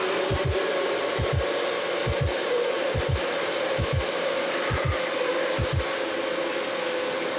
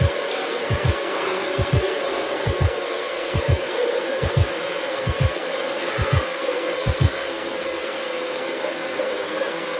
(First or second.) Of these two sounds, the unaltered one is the first